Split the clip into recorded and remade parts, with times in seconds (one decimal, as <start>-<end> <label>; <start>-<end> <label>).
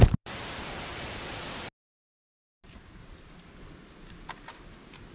0.0-0.9 recorded; 0.9-1.5 remade; 1.5-5.1 recorded